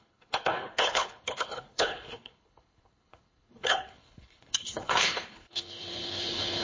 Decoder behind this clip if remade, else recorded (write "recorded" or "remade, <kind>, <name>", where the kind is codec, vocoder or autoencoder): remade, codec, HILCodec